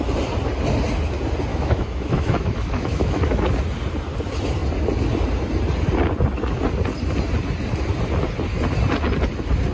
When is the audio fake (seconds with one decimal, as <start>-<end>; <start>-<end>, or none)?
1.5-3.5